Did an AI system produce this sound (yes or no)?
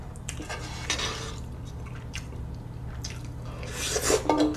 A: no